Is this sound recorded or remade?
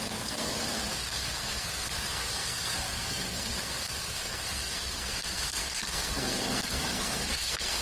remade